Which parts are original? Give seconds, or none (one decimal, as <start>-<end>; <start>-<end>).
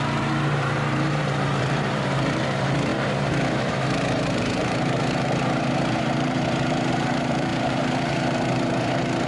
none